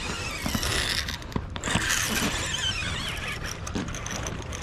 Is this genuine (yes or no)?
yes